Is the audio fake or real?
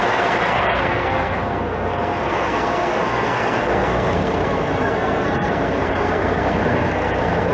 fake